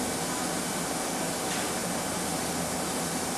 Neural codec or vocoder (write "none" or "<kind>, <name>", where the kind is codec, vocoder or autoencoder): none